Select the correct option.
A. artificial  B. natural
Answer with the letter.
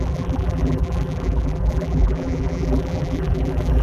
A